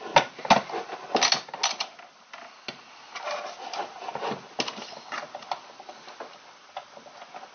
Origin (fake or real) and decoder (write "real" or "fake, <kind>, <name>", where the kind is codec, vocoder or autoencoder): real